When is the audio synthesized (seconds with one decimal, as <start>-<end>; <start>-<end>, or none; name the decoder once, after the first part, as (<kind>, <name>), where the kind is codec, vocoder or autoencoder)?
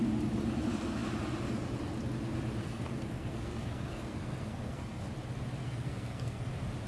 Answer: 2.6-5.0 (codec, SNAC); 5.6-6.5